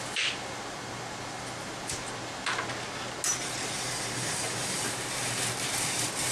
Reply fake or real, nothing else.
real